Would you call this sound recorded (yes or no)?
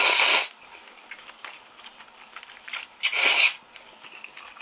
yes